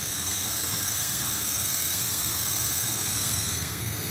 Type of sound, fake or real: fake